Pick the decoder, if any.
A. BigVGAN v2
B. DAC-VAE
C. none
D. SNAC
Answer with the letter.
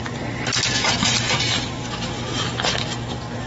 C